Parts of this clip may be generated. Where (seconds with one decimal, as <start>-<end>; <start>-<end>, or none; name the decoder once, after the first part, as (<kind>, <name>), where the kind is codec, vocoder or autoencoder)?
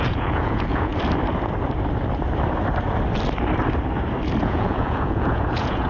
0.0-0.9 (vocoder, Vocos); 4.4-5.9